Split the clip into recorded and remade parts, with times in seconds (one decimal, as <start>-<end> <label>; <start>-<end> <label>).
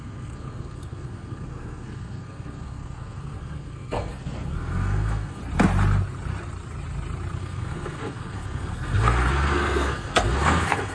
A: 0.0-5.4 remade; 5.4-7.4 recorded; 7.4-10.9 remade